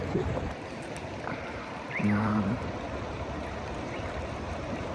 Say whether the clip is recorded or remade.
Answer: remade